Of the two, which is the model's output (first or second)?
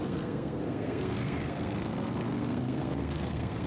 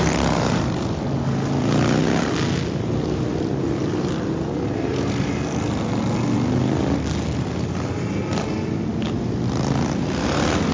first